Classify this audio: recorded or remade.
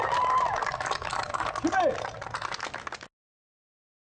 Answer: recorded